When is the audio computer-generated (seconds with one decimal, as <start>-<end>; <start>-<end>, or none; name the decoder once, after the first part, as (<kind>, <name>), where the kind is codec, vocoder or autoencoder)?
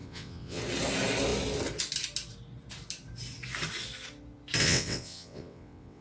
0.0-0.6 (vocoder, WaveNeXt); 4.6-6.0